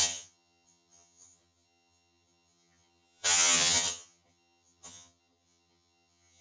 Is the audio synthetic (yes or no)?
yes